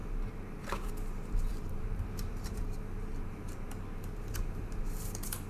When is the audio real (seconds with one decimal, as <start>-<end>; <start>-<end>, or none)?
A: 0.9-1.5; 4.8-5.5